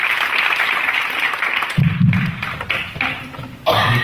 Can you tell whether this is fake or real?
fake